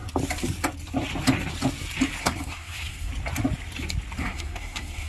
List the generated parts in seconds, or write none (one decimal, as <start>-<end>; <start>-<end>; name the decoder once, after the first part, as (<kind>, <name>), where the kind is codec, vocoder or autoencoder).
2.2-3.1 (codec, SNAC); 4.2-5.1